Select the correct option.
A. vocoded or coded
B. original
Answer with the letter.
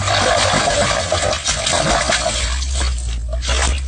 B